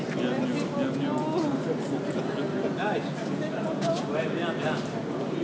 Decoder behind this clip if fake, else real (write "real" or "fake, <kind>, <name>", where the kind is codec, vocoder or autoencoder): real